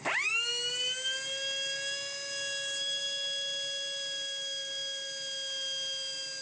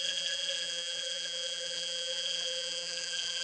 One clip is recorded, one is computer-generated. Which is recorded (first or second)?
first